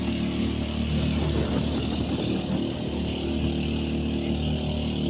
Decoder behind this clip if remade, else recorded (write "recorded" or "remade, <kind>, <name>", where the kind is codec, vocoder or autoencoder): recorded